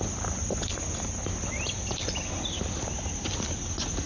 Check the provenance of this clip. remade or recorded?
recorded